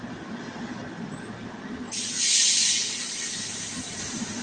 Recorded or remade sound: recorded